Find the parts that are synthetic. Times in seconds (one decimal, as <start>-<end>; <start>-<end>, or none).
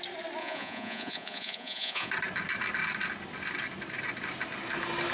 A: 0.4-2.1